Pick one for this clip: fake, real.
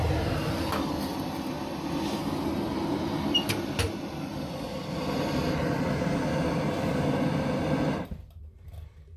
real